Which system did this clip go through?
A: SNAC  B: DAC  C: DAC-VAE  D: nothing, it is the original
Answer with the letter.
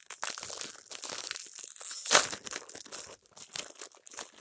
D